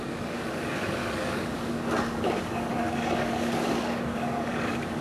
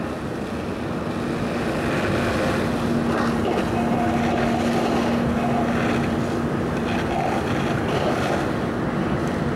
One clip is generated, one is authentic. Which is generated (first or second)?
first